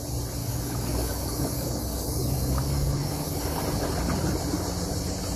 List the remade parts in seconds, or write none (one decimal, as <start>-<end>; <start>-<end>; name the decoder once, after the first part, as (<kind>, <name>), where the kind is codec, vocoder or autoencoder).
0.4-3.6 (codec, DAC)

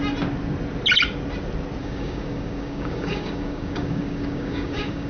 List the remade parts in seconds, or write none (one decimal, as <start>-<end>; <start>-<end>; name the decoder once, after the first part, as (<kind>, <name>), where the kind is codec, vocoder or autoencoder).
1.8-5.1 (codec, DAC)

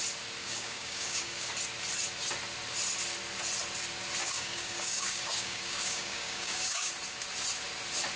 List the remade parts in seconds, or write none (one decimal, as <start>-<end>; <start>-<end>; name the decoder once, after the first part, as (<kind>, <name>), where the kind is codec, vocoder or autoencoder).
0.4-1.5 (codec, DAC); 4.2-6.9

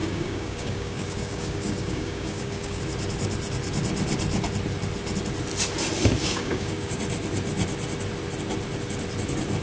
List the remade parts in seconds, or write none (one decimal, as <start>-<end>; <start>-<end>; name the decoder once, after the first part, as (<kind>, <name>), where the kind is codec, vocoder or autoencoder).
0.0-2.8 (codec, DAC); 6.2-7.0

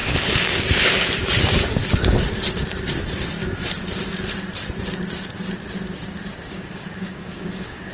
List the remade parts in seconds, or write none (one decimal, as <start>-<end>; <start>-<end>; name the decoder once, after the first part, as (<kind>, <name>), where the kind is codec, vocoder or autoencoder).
0.0-1.8 (codec, DAC); 6.5-7.9